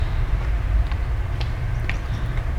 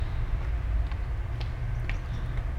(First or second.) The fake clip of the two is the first